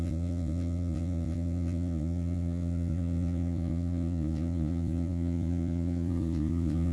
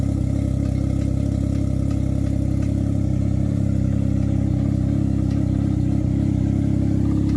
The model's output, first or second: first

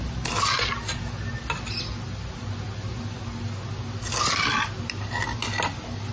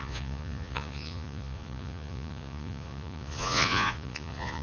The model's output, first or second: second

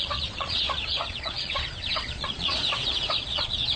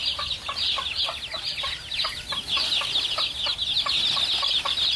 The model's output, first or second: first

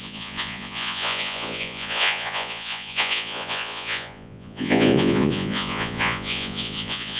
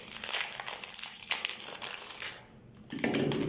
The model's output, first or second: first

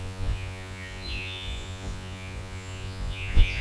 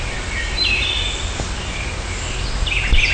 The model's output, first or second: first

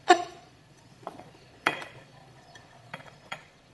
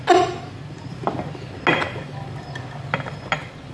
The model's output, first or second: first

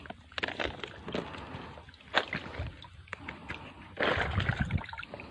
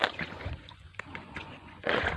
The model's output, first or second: second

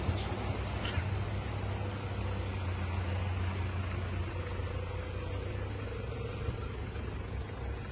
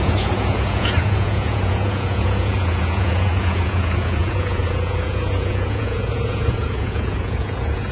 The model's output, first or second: second